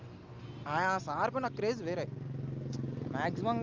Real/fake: real